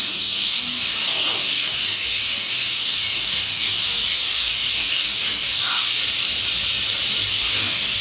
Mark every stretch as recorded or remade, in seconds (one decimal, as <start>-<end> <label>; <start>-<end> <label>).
0.0-6.0 remade; 6.0-7.3 recorded; 7.3-8.0 remade

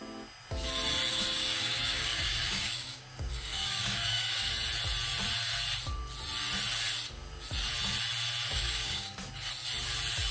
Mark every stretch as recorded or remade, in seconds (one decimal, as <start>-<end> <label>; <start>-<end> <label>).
0.0-1.1 recorded; 1.1-4.5 remade; 4.5-8.5 recorded; 8.5-9.2 remade; 9.2-10.3 recorded

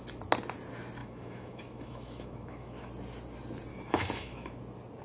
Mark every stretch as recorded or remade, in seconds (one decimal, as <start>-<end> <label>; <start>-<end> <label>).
0.0-1.0 recorded; 1.0-2.9 remade; 2.9-3.7 recorded; 3.7-4.6 remade; 4.6-5.0 recorded